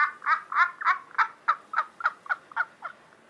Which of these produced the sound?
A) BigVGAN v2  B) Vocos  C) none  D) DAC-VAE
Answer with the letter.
C